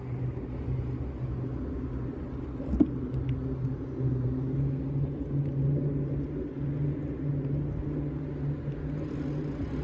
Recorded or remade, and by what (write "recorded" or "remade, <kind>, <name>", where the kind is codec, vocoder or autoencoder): recorded